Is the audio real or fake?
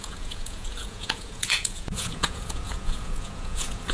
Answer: fake